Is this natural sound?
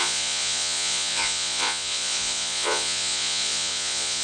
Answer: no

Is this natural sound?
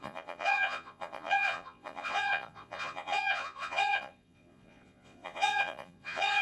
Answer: no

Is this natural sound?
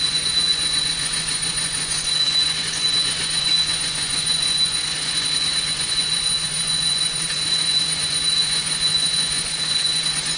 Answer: no